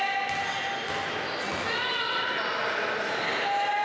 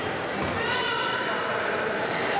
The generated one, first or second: second